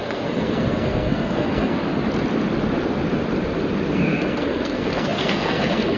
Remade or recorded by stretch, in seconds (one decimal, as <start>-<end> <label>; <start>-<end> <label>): 0.0-1.8 remade; 1.8-3.9 recorded; 3.9-6.0 remade